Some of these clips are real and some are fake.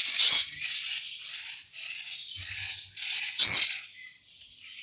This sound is real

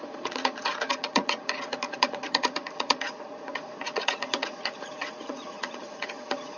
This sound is fake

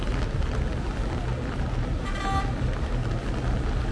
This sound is real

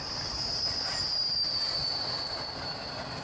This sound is real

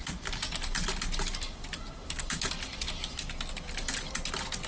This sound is real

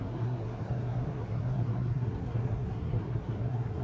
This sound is fake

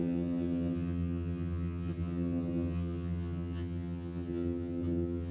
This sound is fake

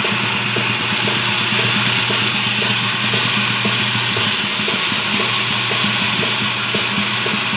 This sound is real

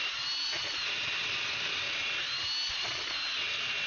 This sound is real